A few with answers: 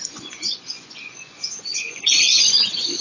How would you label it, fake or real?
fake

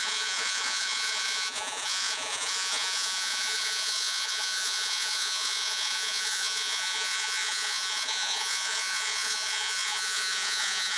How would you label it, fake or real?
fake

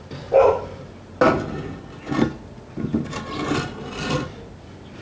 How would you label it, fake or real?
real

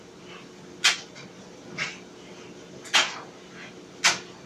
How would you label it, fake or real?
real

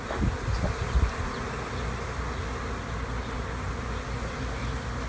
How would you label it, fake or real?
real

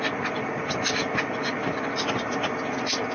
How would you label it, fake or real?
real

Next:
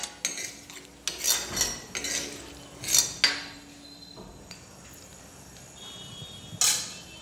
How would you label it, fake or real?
real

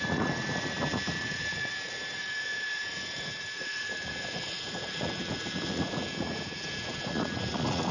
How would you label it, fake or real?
fake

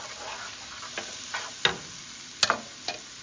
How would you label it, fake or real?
real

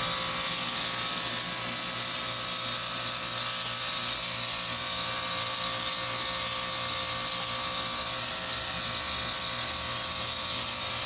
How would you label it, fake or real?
real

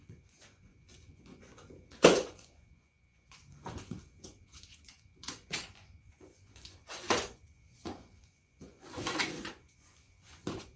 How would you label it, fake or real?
fake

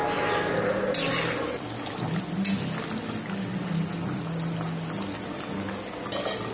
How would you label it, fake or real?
real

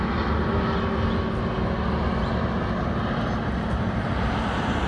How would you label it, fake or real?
real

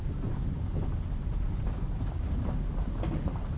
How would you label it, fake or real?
real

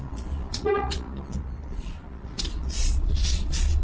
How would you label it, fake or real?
fake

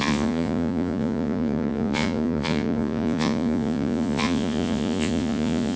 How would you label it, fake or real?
fake